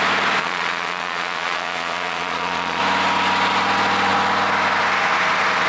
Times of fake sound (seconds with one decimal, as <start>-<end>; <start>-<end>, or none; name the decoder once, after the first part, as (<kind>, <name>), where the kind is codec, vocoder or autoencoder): 0.4-2.8 (vocoder, Vocos)